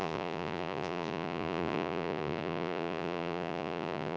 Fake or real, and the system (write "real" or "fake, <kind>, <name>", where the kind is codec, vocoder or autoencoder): fake, vocoder, Vocos